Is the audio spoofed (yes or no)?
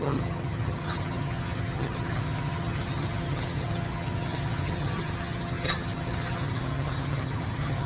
yes